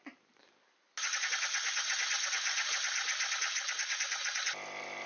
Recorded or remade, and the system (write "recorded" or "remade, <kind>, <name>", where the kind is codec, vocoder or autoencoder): recorded